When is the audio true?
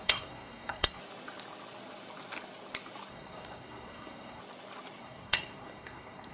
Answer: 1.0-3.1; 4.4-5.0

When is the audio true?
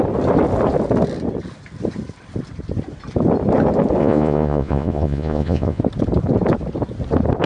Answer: 0.0-4.0; 5.8-7.5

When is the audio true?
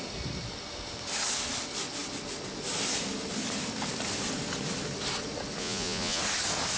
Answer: 0.0-5.6; 6.2-6.8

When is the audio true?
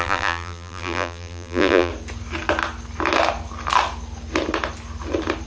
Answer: 1.9-5.5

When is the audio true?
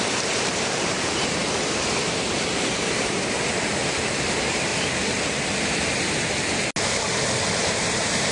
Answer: 4.7-7.5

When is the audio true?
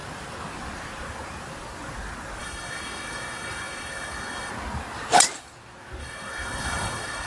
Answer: 0.0-2.4; 4.5-6.0